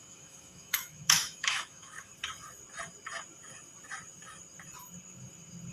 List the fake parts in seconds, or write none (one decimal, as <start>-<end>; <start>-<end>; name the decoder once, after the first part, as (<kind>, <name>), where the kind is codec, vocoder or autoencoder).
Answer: 0.0-2.1 (autoencoder, DAC-VAE)